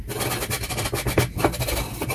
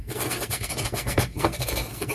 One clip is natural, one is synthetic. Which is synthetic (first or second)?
second